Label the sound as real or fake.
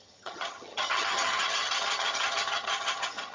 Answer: fake